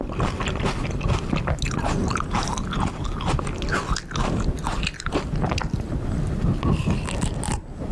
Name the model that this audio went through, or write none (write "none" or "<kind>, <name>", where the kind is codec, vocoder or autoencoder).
none